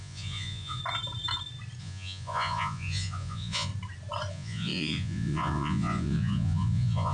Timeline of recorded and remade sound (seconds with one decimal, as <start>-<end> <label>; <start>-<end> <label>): 0.0-0.8 remade; 0.8-1.8 recorded; 1.8-3.7 remade; 3.7-4.3 recorded; 4.3-7.1 remade